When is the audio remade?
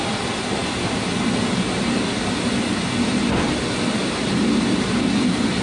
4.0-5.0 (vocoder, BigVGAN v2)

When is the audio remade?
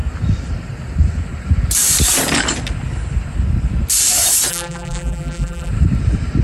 4.5-5.7 (vocoder, BigVGAN v2)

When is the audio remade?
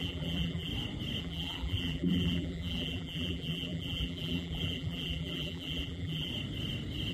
0.0-0.7 (vocoder, BigVGAN v2); 1.2-6.3